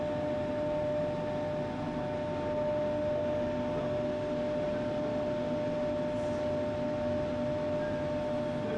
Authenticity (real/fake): real